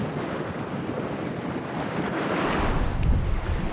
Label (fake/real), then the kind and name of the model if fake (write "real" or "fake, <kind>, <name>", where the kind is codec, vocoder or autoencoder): real